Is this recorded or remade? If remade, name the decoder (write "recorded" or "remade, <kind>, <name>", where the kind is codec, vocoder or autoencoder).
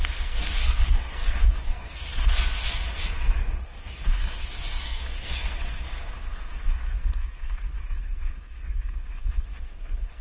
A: remade, codec, SNAC